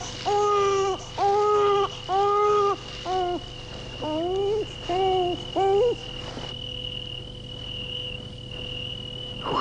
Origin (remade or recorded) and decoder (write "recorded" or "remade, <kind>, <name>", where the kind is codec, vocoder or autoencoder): recorded